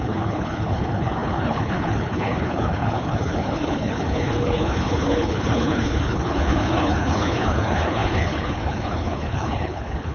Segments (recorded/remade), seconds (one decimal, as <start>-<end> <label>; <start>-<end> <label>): 0.0-10.1 remade